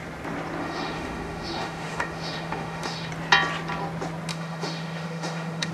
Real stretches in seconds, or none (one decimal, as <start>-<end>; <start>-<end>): 0.0-0.6; 3.1-4.3